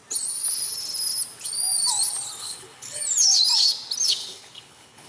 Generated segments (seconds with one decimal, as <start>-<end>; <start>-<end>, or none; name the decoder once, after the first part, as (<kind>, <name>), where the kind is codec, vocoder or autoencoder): 2.4-3.0 (codec, HILCodec); 4.2-5.1